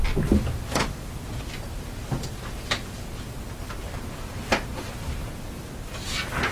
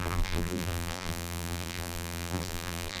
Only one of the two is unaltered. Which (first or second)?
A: first